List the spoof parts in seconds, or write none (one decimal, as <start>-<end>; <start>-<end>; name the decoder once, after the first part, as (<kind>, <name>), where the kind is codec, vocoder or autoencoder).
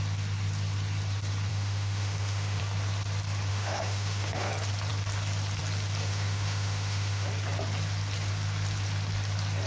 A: 1.5-2.6 (autoencoder, DAC-VAE); 3.5-4.5; 6.0-7.3